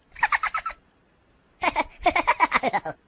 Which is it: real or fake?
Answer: real